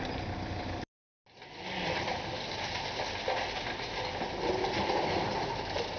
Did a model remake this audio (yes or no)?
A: no